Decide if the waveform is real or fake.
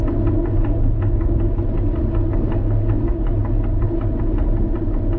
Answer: real